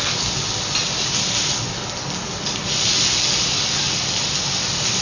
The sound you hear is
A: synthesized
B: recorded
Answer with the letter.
B